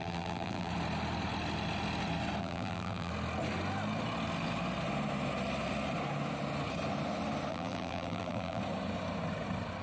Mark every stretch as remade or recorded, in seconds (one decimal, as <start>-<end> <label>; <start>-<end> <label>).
0.0-0.7 remade; 0.7-2.4 recorded; 2.4-3.1 remade; 3.1-7.5 recorded; 7.5-8.6 remade; 8.6-9.8 recorded